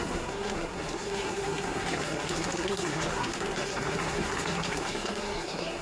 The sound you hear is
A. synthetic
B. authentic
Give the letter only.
A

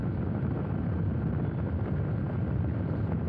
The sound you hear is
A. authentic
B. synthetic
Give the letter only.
A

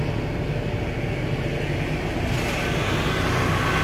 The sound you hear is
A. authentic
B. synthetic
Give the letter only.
A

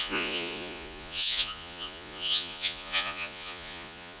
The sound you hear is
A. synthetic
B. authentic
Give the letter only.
A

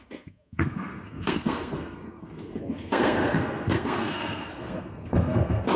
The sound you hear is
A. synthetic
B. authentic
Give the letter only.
A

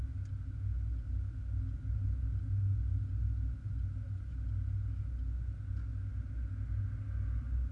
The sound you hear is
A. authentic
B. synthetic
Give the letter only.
A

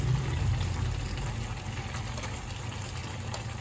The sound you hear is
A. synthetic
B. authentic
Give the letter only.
B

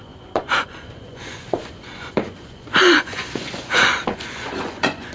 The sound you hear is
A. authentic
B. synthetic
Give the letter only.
B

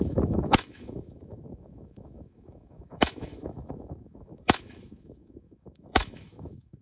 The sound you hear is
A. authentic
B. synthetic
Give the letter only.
B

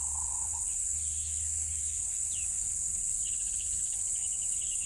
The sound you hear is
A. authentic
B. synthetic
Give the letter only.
B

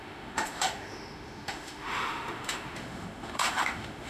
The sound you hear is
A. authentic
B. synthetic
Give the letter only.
B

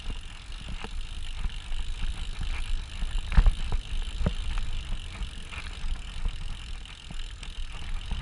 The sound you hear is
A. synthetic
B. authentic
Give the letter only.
B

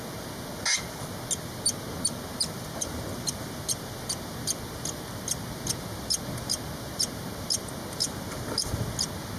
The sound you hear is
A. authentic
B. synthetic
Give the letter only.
A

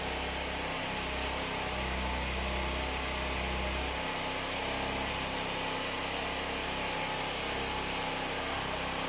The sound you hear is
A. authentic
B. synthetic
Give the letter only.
A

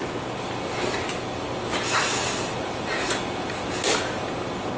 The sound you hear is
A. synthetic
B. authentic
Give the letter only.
B